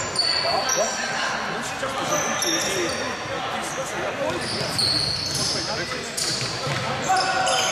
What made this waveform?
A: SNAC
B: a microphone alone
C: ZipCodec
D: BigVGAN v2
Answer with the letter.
B